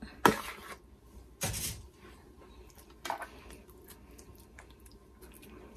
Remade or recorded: recorded